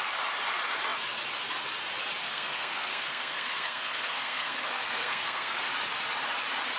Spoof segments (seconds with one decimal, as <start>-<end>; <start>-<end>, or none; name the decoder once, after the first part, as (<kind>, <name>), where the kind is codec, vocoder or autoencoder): 2.2-5.7 (codec, SNAC)